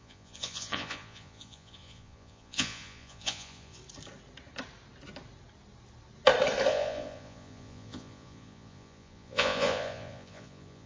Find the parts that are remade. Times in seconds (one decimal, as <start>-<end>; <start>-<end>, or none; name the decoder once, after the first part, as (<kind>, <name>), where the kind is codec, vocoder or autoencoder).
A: 0.0-3.8 (vocoder, Vocos); 6.7-10.9